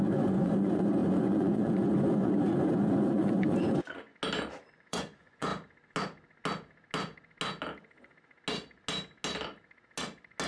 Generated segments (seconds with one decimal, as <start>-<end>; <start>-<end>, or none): 0.0-4.1; 4.7-5.5